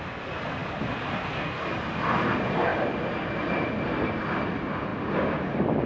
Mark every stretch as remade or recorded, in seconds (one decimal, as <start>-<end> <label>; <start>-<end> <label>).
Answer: 0.0-5.9 recorded